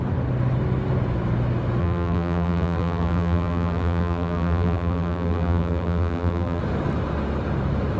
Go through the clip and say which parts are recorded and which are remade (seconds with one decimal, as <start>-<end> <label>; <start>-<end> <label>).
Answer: 0.0-1.8 recorded; 1.8-6.6 remade; 6.6-8.0 recorded